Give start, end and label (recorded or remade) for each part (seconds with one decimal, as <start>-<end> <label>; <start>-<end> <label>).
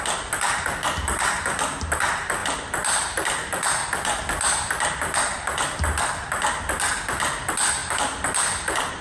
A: 0.0-9.0 recorded